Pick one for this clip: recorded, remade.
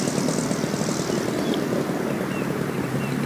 recorded